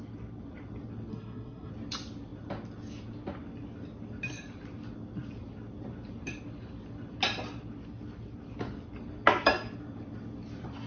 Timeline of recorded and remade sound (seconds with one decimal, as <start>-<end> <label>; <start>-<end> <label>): 0.0-1.1 recorded; 1.1-1.7 remade; 1.7-10.9 recorded